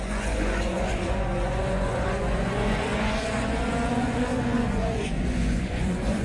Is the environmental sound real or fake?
fake